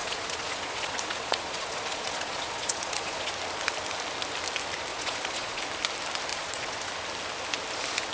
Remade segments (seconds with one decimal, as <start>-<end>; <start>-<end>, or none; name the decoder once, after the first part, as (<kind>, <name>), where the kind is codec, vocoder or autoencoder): 0.0-3.3 (vocoder, Vocos); 4.9-5.6; 6.3-6.8